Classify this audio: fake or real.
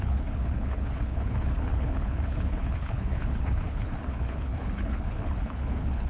fake